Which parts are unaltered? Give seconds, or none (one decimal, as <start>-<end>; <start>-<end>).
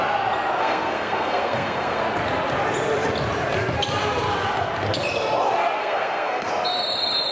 0.0-0.6; 2.0-5.8; 6.5-7.3